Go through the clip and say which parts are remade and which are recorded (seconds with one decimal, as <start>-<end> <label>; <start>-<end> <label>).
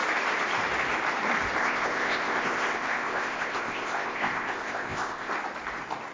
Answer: 0.0-1.6 recorded; 1.6-5.3 remade; 5.3-6.1 recorded